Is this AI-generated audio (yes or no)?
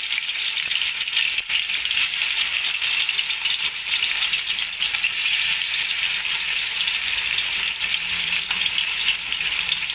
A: yes